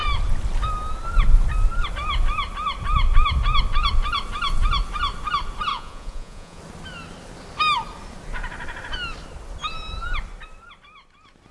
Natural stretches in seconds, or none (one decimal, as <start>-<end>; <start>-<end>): 0.0-5.7; 6.6-11.5